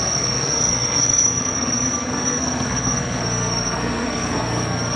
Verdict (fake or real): fake